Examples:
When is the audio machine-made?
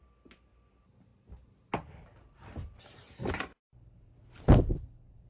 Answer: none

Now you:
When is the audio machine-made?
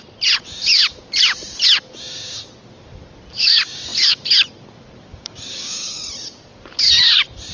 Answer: 5.1-6.0 (codec, DAC)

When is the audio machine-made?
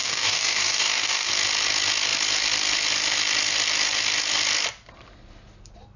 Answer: 0.0-1.3 (codec, DAC)